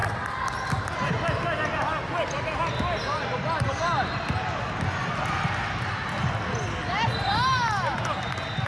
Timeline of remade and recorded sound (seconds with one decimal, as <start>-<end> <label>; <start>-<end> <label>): 0.0-8.7 recorded